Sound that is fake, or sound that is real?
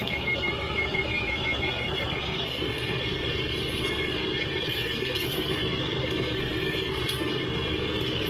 fake